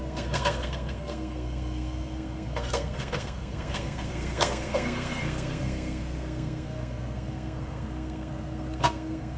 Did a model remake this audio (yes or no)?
yes